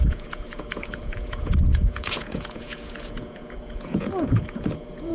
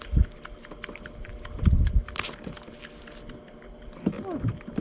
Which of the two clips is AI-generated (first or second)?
first